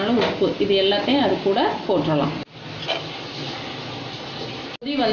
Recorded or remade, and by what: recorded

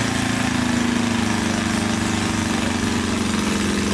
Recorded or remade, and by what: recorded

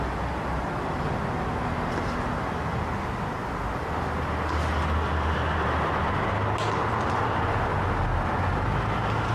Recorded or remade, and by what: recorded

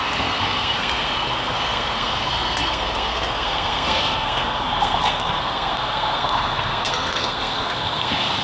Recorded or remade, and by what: remade, codec, SNAC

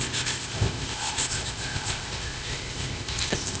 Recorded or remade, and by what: remade, codec, ZipCodec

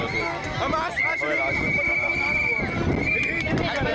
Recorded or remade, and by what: recorded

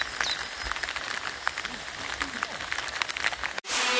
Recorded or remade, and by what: recorded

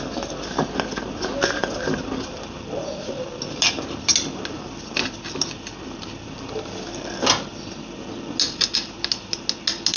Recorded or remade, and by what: recorded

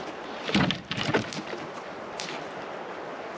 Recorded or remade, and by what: recorded